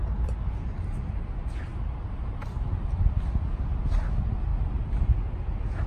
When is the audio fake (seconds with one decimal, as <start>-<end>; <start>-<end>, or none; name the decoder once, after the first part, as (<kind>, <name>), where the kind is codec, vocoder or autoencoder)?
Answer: none

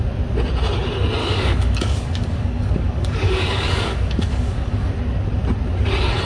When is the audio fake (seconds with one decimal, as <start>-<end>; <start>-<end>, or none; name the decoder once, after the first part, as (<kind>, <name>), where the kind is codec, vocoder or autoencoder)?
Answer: 1.2-4.9 (codec, DAC)